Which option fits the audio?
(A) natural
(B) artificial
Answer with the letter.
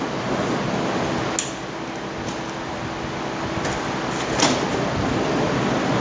A